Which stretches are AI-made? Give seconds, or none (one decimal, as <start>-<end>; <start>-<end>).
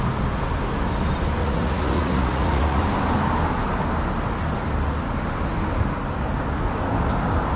1.4-2.8